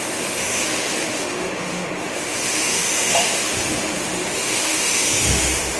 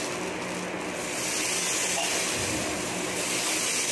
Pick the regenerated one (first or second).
first